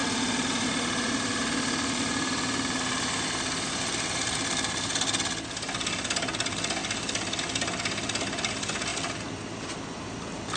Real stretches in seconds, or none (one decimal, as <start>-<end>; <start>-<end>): 4.9-10.6